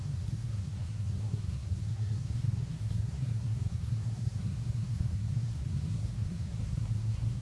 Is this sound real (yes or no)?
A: no